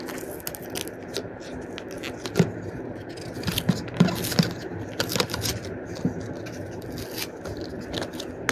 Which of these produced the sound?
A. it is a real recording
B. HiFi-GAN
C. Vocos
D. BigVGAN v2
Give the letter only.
A